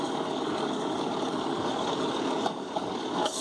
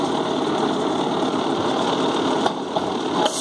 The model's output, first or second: first